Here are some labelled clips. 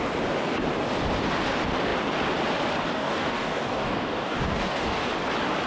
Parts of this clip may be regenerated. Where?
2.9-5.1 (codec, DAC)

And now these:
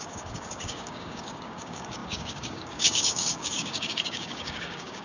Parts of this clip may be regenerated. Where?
0.0-5.0 (codec, DAC)

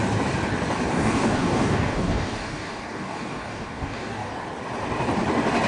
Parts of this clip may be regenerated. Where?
0.9-4.3 (codec, DAC)

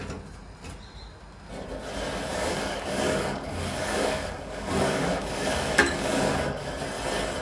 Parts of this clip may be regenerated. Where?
2.3-6.7 (codec, DAC)